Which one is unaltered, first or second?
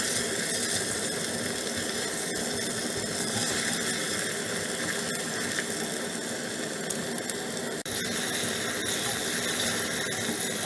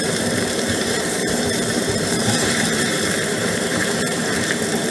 first